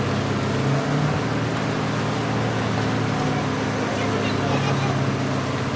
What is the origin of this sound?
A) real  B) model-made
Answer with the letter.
A